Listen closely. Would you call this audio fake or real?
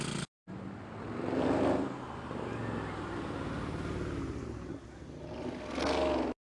real